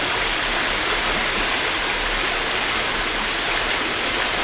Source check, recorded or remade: recorded